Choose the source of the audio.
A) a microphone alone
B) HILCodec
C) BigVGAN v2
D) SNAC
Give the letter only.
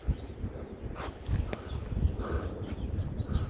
C